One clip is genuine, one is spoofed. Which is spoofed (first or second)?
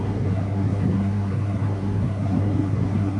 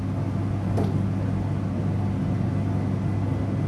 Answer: first